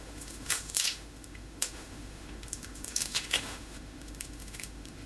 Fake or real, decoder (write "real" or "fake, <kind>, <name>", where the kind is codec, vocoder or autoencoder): fake, autoencoder, DAC-VAE